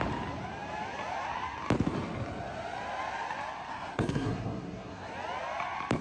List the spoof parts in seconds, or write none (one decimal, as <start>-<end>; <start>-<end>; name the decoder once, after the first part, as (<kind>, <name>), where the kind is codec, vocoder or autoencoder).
3.7-5.1 (codec, SNAC)